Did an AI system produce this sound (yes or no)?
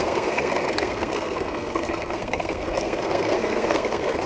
yes